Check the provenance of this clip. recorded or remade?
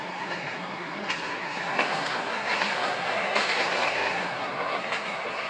remade